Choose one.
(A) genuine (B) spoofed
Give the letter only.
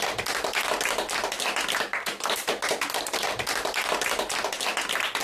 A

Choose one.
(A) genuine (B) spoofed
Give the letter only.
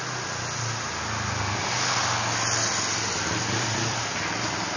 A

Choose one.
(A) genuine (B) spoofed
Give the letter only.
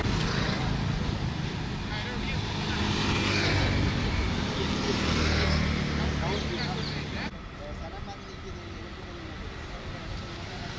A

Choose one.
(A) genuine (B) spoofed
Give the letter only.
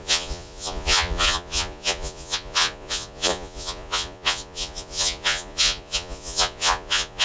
B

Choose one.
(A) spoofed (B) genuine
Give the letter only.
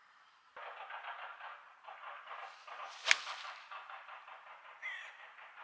B